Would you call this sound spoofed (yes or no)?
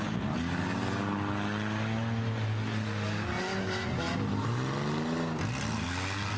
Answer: no